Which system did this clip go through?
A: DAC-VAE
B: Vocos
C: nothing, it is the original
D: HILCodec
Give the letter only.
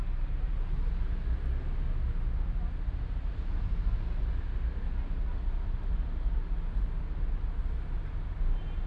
C